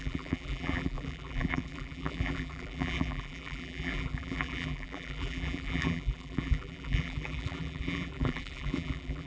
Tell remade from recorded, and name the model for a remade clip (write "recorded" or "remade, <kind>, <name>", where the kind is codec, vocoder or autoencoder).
remade, vocoder, BigVGAN v2